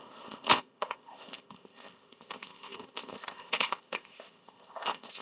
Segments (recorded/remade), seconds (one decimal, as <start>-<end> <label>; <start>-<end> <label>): 0.0-5.2 remade